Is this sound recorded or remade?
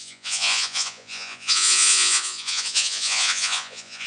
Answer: remade